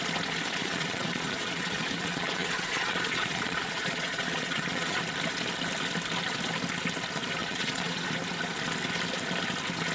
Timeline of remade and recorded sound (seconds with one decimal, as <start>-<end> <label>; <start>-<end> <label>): 0.0-0.5 recorded; 0.5-5.0 remade; 5.0-7.4 recorded; 7.4-8.1 remade; 8.1-9.9 recorded